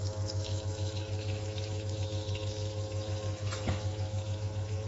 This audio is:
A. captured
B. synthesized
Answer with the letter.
B